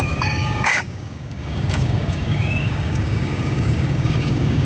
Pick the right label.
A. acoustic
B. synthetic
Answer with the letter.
B